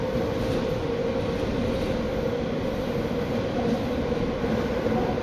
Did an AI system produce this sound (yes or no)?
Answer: no